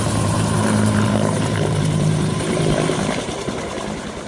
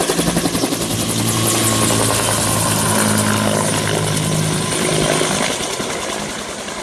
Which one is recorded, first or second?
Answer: second